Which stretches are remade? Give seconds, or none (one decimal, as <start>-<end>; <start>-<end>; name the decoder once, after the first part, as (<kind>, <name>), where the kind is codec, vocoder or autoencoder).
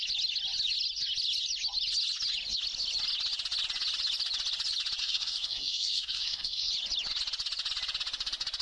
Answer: 5.0-6.7 (codec, SNAC)